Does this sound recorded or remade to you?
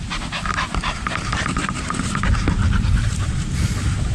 recorded